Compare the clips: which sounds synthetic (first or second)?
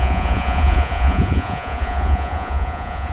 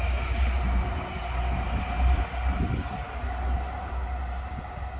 first